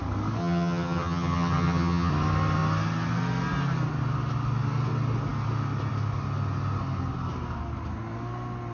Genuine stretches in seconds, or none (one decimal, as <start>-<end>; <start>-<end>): 0.0-0.4; 2.1-8.7